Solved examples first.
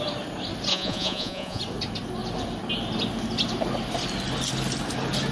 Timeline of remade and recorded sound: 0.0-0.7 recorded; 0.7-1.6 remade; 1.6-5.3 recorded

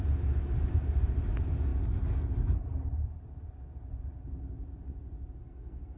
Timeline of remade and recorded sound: 0.0-5.4 recorded; 5.4-6.0 remade

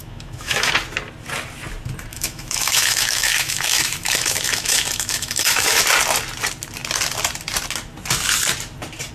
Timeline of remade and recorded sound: 0.0-0.7 remade; 0.7-2.1 recorded; 2.1-5.8 remade; 5.8-9.1 recorded